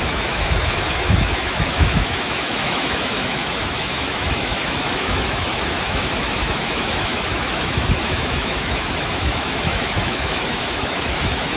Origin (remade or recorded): remade